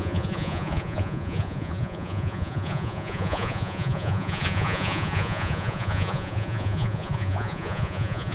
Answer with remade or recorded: remade